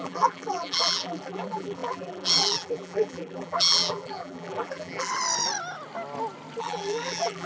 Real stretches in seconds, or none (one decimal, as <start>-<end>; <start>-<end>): 5.1-6.6